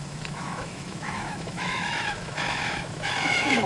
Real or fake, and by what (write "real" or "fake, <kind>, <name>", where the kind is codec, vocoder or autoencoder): fake, autoencoder, DAC-VAE